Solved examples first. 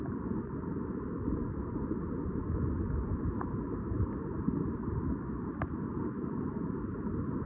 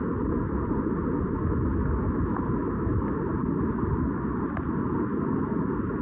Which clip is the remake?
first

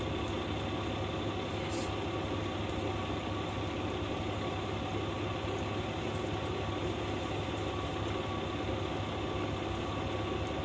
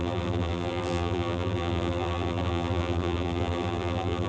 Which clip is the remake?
second